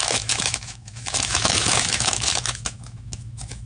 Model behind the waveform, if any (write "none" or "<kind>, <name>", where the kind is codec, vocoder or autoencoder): autoencoder, DAC-VAE